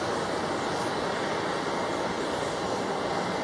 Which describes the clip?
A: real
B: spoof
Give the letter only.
A